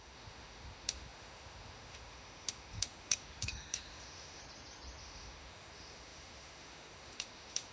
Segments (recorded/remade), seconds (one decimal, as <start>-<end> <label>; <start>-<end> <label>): 0.0-4.4 remade; 4.4-5.0 recorded; 5.0-7.7 remade